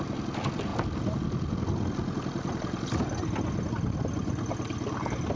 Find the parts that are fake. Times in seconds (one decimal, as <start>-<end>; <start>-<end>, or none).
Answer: none